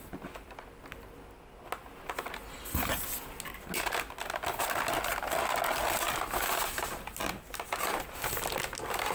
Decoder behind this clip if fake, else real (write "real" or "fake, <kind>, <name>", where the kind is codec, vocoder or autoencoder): real